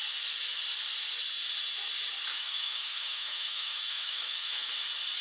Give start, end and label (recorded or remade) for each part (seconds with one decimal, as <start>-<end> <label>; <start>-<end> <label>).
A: 0.0-2.3 recorded; 2.3-4.8 remade; 4.8-5.2 recorded